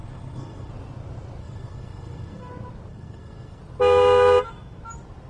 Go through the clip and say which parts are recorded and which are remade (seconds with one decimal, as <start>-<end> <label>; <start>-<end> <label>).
0.0-0.7 remade; 0.7-1.4 recorded; 1.4-2.5 remade; 2.5-2.9 recorded; 2.9-3.6 remade; 3.6-5.3 recorded